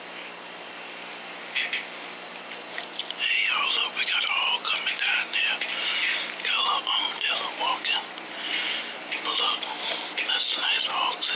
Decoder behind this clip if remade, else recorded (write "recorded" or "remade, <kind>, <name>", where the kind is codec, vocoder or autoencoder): recorded